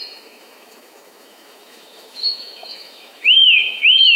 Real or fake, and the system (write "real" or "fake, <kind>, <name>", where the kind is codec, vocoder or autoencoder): fake, autoencoder, DAC-VAE